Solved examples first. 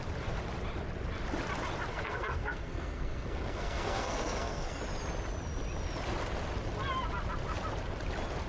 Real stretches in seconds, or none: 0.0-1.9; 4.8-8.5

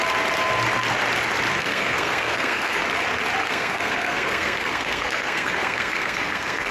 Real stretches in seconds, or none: 0.0-1.6; 2.8-3.4